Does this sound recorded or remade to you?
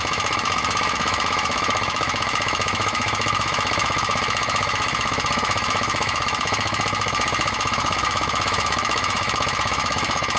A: remade